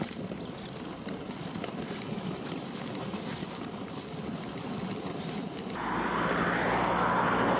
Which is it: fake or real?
real